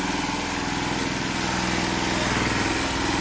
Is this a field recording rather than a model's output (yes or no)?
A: yes